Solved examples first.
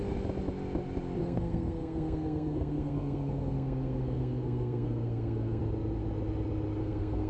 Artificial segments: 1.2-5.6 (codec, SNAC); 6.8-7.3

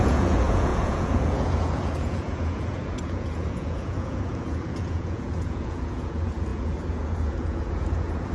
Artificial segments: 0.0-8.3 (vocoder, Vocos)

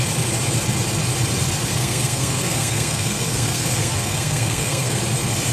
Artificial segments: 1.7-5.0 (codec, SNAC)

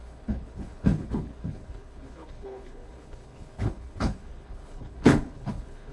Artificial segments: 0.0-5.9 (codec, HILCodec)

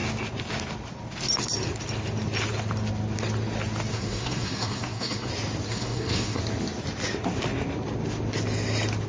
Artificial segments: 3.9-5.3 (codec, SNAC); 5.7-6.4

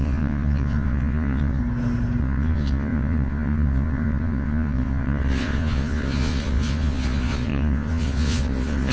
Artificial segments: 0.0-1.6 (vocoder, Vocos); 2.2-8.9

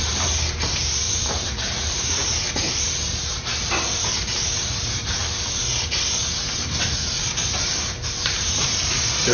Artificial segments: 0.0-5.2 (vocoder, BigVGAN v2); 6.6-9.3